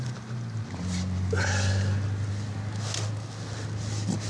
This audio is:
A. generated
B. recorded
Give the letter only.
B